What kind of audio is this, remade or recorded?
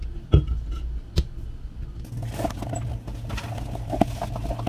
recorded